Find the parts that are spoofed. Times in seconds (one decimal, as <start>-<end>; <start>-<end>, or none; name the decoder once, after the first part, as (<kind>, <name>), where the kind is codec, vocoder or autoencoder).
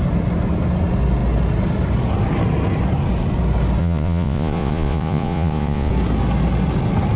3.8-5.9 (vocoder, Vocos)